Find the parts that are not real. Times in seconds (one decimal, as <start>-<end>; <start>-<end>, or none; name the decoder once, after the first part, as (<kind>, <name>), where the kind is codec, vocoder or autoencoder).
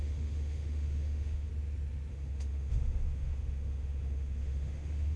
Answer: 0.0-1.5 (autoencoder, DAC-VAE); 2.1-5.2